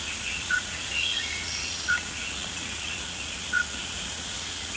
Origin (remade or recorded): remade